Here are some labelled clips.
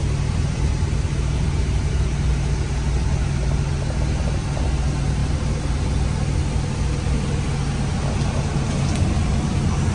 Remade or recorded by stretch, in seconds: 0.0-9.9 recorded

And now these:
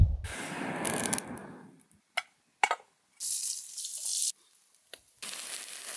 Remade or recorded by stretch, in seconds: 0.0-6.0 recorded

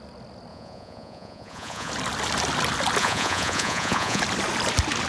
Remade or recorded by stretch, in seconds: 0.0-0.5 recorded; 0.5-1.9 remade; 1.9-3.0 recorded; 3.0-4.2 remade; 4.2-5.1 recorded

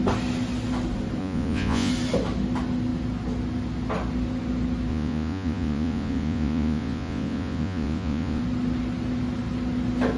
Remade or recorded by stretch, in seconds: 0.0-1.2 recorded; 1.2-1.9 remade; 1.9-4.9 recorded; 4.9-8.4 remade; 8.4-10.2 recorded

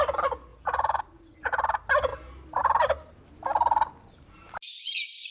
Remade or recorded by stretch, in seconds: 0.0-0.5 recorded; 0.5-1.0 remade; 1.0-5.3 recorded

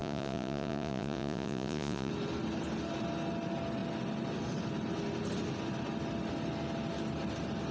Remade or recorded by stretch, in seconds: 0.0-2.1 remade; 2.1-7.7 recorded